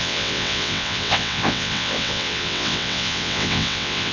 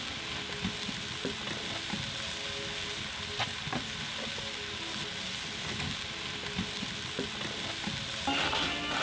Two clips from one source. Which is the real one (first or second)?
second